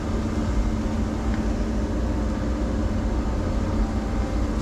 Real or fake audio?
real